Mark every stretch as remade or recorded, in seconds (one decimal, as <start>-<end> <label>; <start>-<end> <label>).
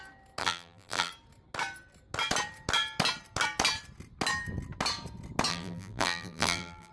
0.0-0.4 recorded; 0.4-1.1 remade; 1.1-5.5 recorded; 5.5-6.9 remade